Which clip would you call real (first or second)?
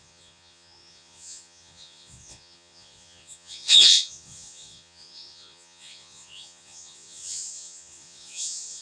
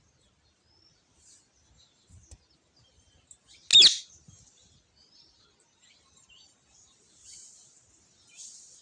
second